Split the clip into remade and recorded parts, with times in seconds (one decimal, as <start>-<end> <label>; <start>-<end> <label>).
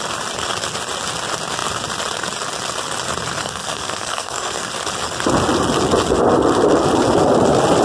0.0-3.4 recorded; 3.4-4.7 remade; 4.7-7.8 recorded